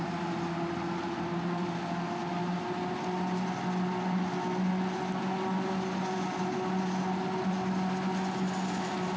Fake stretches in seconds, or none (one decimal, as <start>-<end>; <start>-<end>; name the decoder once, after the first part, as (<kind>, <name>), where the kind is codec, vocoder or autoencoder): none